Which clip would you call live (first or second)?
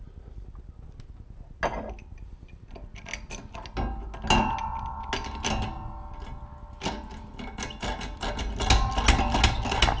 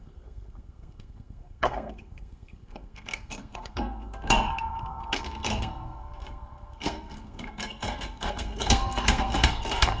first